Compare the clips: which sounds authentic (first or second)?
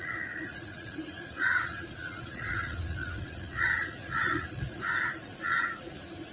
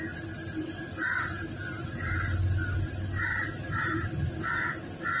second